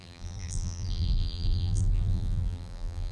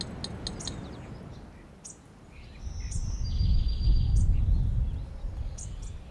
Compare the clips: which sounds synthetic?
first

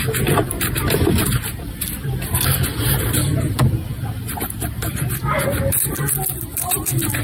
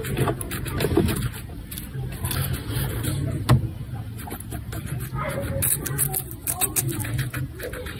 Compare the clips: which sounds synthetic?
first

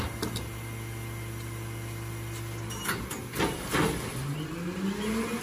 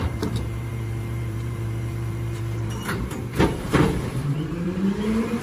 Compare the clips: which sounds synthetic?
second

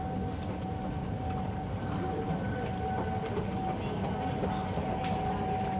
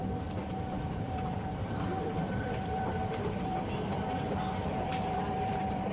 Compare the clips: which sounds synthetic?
second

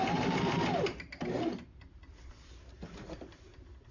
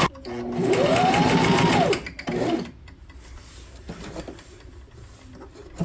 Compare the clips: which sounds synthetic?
first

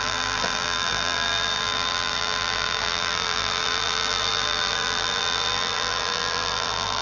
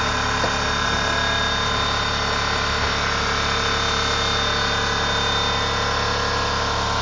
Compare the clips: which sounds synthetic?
first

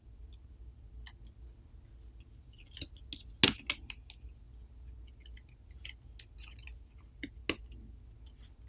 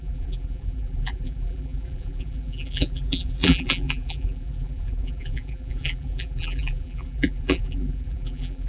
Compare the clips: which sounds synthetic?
second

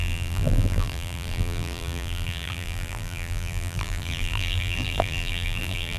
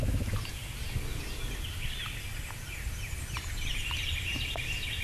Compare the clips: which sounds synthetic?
first